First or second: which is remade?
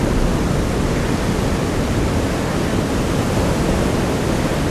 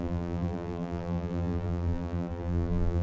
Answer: second